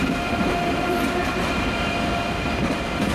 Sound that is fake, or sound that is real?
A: real